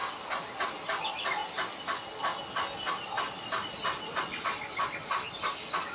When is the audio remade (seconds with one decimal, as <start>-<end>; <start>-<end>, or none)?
none